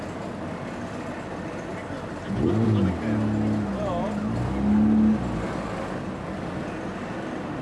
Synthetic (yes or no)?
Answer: no